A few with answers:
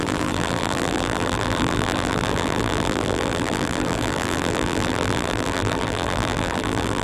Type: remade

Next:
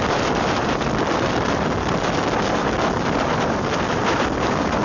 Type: remade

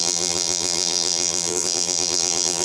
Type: remade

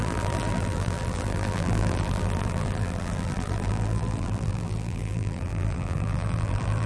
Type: remade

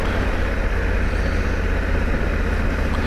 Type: recorded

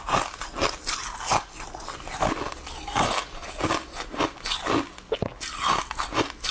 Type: recorded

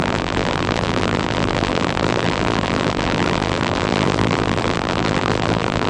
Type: remade